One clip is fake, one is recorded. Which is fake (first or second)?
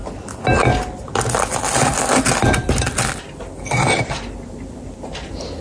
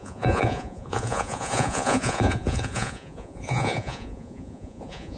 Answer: second